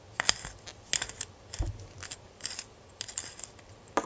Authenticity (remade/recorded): recorded